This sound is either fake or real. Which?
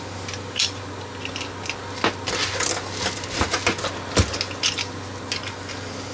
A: real